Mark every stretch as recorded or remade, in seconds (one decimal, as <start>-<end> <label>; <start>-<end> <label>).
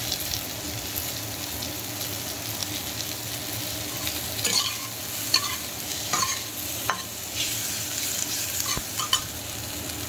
0.0-10.1 recorded